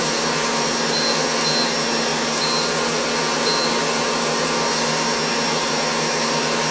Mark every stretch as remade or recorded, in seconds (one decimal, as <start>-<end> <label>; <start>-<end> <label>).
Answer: 0.0-6.7 recorded